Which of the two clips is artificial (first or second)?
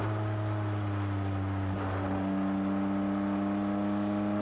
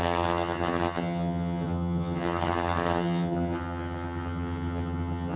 second